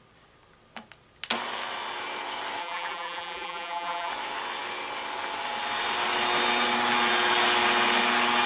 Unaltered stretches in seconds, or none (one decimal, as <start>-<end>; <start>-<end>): 0.0-2.6; 4.1-8.5

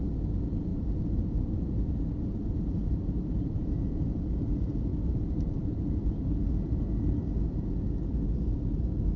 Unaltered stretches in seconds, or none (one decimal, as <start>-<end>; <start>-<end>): 0.0-0.7; 4.5-4.9; 6.3-9.2